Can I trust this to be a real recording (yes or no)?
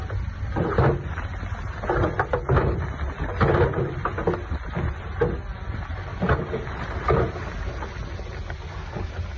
yes